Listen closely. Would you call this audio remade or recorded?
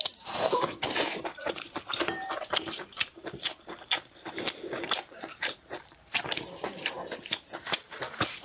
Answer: remade